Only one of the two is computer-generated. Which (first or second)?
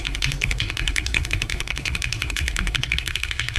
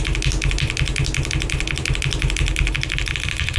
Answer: first